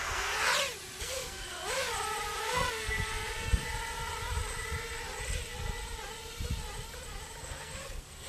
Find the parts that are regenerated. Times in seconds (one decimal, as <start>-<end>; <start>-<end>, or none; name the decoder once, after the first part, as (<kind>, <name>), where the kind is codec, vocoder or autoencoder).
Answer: 0.0-0.5 (codec, SNAC); 1.0-1.6; 2.4-3.6; 7.4-8.3